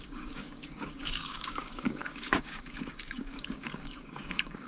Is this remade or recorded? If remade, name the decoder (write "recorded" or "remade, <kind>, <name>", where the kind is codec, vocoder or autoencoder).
remade, codec, DAC